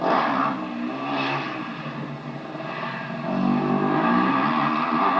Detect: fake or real real